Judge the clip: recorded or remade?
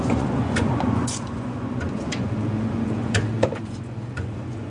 remade